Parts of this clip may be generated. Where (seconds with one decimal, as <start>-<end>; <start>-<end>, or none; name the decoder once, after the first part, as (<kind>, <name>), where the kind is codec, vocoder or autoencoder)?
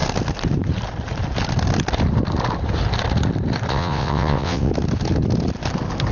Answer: 3.7-4.7 (vocoder, WaveNeXt)